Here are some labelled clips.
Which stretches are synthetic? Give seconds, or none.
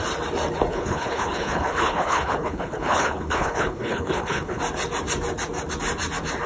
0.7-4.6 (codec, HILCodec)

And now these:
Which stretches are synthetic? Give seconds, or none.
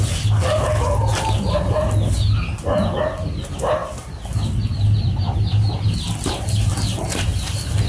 none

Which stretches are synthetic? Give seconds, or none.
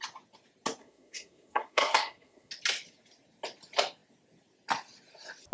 0.8-2.5 (codec, SNAC)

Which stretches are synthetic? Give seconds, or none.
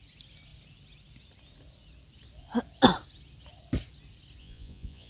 4.4-5.1 (vocoder, Vocos)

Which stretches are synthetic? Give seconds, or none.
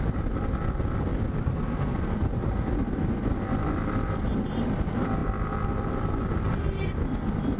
none